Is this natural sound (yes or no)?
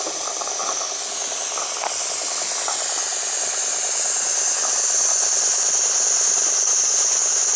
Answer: yes